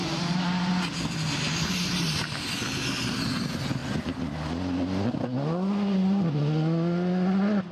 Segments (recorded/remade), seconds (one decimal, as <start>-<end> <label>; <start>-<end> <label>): 0.0-0.7 remade; 0.7-7.7 recorded